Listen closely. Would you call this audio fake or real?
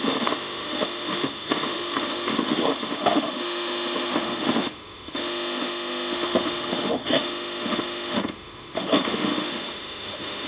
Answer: fake